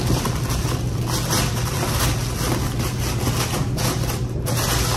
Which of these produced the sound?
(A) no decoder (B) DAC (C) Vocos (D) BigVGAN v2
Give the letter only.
A